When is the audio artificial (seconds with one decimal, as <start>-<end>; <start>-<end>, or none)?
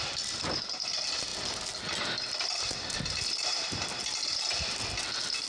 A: none